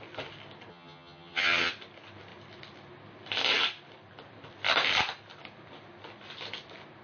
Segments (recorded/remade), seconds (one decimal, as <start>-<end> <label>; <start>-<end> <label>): 0.0-0.7 recorded; 0.7-1.7 remade; 1.7-7.0 recorded